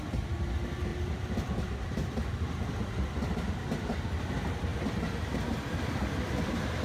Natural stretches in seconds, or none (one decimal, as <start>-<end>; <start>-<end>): 0.0-0.9; 3.3-6.8